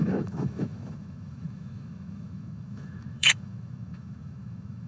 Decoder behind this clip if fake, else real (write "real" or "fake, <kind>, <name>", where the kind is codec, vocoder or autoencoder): fake, autoencoder, DAC-VAE